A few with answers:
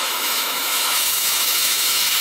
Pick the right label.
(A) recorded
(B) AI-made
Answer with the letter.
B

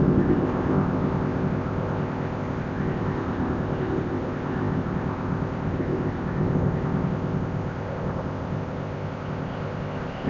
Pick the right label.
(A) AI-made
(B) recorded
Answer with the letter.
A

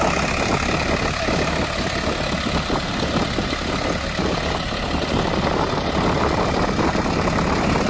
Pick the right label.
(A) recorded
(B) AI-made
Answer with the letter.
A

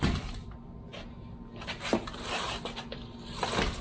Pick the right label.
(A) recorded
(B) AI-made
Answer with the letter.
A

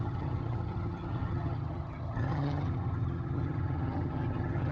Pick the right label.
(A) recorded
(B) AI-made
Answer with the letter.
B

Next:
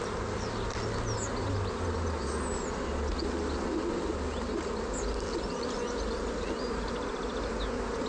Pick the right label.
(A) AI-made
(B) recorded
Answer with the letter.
B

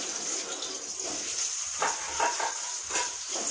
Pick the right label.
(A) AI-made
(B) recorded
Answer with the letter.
B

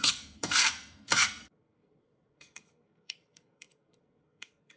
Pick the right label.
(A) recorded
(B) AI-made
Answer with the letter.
B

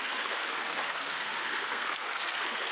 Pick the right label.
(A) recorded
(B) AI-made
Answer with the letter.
B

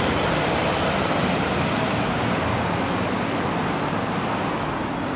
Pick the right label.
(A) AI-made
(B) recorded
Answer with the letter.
B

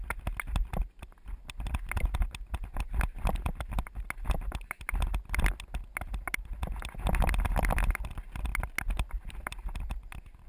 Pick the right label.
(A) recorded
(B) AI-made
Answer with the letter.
A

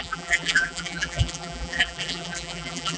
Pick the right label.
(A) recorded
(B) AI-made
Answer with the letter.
B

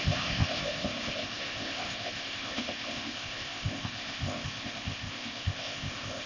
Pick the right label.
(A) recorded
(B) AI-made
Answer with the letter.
B